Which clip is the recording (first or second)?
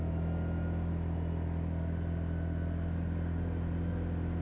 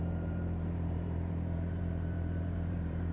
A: first